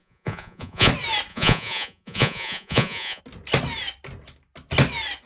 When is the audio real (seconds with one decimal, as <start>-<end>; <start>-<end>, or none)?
0.9-1.3; 3.2-5.3